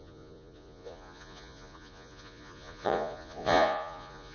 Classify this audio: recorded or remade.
remade